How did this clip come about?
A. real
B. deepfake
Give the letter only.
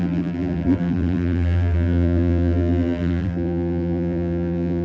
B